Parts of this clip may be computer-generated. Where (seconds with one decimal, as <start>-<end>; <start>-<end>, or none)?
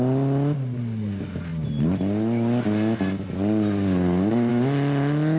none